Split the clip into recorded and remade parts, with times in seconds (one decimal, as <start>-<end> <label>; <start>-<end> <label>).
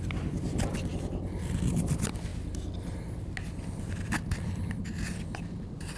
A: 0.0-6.0 recorded